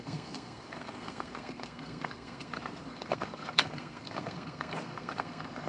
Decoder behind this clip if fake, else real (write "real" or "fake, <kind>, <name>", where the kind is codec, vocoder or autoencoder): fake, codec, SNAC